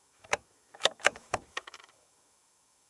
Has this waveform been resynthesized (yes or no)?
yes